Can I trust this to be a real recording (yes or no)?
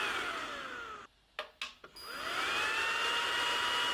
yes